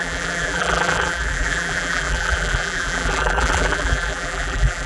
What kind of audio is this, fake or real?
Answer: fake